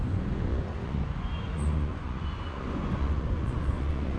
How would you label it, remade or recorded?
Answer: remade